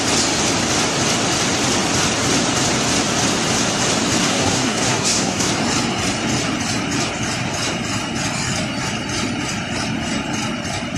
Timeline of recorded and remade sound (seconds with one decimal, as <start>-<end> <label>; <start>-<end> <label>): 0.0-4.2 recorded; 4.2-5.5 remade; 5.5-11.0 recorded